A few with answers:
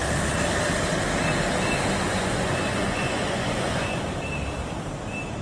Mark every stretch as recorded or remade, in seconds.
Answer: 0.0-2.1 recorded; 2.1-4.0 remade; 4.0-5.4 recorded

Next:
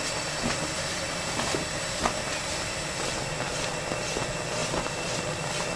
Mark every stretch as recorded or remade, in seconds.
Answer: 0.0-5.8 recorded

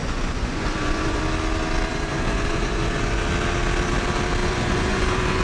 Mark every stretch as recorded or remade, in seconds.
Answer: 0.0-1.2 remade; 1.2-1.9 recorded; 1.9-3.2 remade; 3.2-4.4 recorded; 4.4-5.4 remade

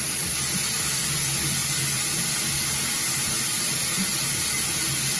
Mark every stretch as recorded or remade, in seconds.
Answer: 0.0-5.2 recorded